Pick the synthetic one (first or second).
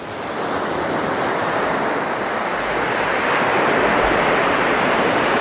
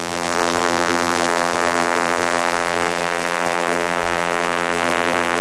second